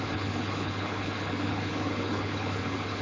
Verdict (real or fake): fake